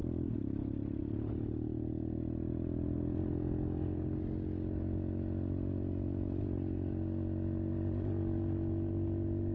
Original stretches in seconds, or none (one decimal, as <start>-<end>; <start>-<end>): 0.0-9.5